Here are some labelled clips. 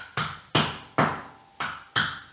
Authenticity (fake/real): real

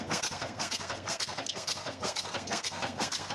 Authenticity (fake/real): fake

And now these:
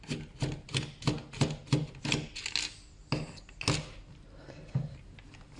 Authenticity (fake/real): real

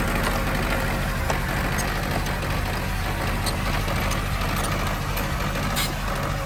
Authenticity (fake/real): real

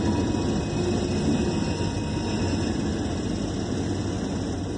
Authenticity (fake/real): real